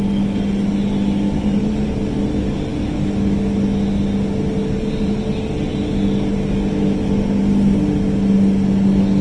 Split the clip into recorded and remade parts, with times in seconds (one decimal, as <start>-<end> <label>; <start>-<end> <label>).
0.0-9.2 recorded